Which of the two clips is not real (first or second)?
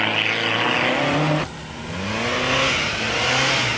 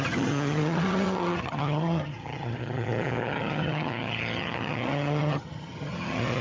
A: second